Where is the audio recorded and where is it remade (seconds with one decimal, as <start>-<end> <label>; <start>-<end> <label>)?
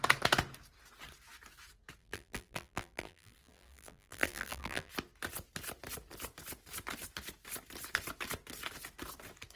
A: 0.0-2.0 recorded; 2.0-4.9 remade; 4.9-9.6 recorded